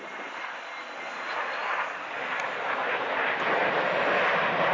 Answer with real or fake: real